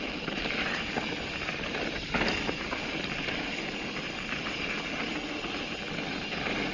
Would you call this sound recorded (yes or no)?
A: yes